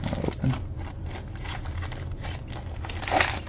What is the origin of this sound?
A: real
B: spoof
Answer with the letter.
A